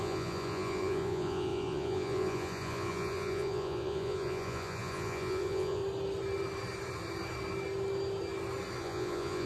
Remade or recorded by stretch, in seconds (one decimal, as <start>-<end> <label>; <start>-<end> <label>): 0.0-5.8 remade; 5.8-8.8 recorded; 8.8-9.5 remade